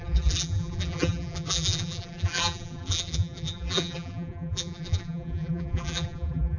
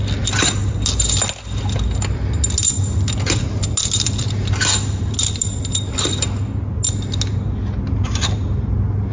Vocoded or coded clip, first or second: first